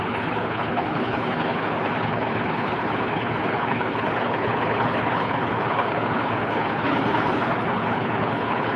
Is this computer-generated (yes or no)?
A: yes